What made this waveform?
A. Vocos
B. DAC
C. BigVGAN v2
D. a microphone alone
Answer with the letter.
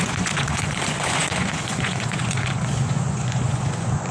A